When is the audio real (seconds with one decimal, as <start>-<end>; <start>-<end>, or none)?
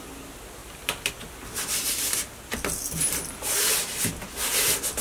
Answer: 0.0-0.6; 1.1-5.0